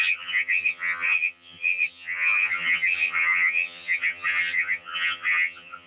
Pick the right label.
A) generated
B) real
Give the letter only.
A